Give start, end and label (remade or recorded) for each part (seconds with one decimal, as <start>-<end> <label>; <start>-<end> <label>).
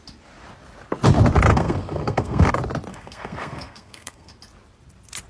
0.0-1.5 recorded; 1.5-2.5 remade; 2.5-2.9 recorded; 2.9-4.3 remade; 4.3-5.3 recorded